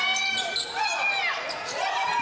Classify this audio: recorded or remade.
recorded